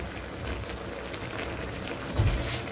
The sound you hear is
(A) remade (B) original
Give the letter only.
B